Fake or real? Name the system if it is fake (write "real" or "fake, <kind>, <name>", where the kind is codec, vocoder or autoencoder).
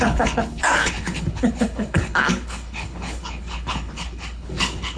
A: fake, codec, HILCodec